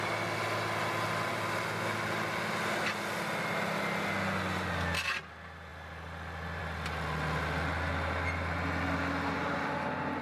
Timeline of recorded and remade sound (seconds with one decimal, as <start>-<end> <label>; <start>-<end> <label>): 0.0-10.2 recorded